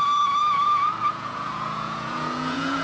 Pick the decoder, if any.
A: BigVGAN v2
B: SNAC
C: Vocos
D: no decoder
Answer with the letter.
C